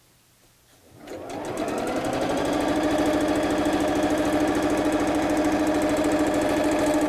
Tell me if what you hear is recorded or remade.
recorded